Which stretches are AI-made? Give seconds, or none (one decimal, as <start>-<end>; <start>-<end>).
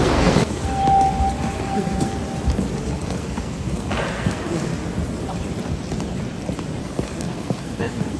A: 0.0-0.8; 1.5-2.2; 2.8-4.7; 6.8-8.2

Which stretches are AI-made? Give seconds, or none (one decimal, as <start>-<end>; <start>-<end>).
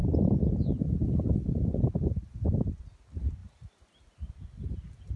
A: none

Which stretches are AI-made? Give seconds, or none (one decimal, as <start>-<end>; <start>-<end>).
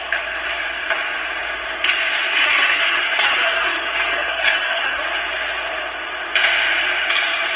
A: 2.3-5.0